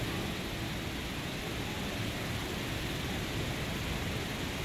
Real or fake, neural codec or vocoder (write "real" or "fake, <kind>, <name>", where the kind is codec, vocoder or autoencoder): real